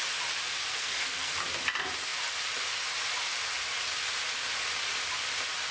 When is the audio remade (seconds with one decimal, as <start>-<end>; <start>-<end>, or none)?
0.7-1.4